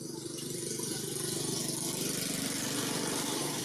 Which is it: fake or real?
real